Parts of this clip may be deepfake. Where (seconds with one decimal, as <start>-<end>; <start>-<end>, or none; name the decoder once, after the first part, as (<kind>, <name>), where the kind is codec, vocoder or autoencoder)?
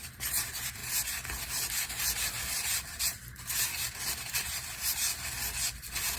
0.0-0.8 (vocoder, BigVGAN v2); 1.9-3.7; 4.3-5.1